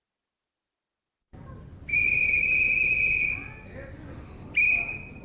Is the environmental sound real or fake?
real